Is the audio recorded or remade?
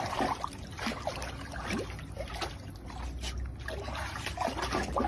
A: recorded